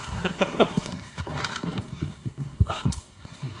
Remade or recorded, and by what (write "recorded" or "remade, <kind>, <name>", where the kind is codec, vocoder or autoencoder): remade, codec, SNAC